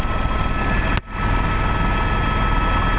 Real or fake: real